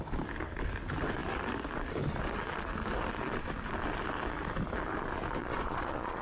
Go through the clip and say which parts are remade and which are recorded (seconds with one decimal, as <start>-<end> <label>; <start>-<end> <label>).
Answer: 0.0-5.4 recorded; 5.4-6.2 remade